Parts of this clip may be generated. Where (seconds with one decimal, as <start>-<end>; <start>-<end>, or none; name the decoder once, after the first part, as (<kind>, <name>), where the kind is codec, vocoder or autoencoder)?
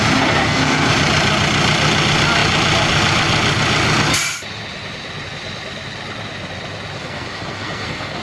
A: 0.4-0.9 (codec, SNAC); 7.0-8.2